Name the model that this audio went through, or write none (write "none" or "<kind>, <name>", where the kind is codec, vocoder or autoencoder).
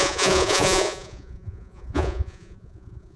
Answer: vocoder, Vocos